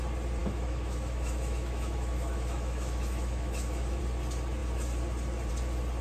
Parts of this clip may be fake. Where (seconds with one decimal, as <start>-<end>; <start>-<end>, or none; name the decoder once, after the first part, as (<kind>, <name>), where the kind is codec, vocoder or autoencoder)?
0.4-4.0 (autoencoder, DAC-VAE)